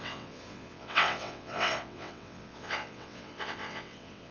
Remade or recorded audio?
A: remade